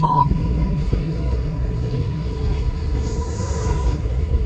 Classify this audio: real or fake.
fake